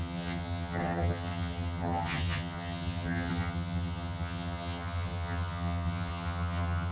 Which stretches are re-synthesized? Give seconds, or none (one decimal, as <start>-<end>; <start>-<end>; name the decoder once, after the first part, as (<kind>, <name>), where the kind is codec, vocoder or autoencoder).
0.0-6.9 (vocoder, HiFi-GAN)